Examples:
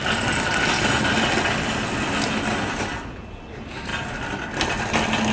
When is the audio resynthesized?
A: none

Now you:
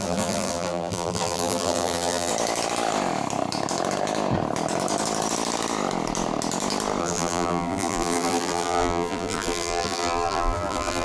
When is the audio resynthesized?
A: 0.0-2.3 (vocoder, BigVGAN v2); 7.0-11.0